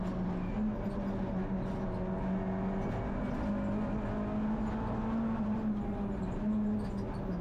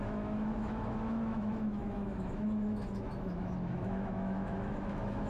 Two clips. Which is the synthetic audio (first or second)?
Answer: second